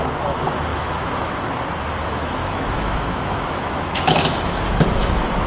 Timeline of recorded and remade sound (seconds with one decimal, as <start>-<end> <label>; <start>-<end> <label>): 0.0-0.7 recorded; 0.7-1.3 remade; 1.3-2.0 recorded; 2.0-4.6 remade; 4.6-5.0 recorded; 5.0-5.5 remade